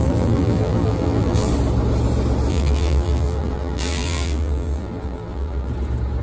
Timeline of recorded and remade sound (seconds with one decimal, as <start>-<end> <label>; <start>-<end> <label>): 0.0-1.5 remade; 1.5-2.5 recorded; 2.5-5.7 remade; 5.7-6.2 recorded